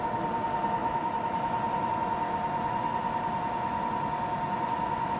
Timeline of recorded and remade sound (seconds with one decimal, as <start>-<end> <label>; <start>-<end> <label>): 0.0-0.8 recorded; 0.8-1.9 remade; 1.9-5.2 recorded